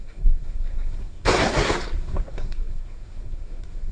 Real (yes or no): no